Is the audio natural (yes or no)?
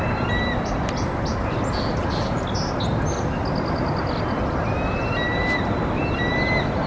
yes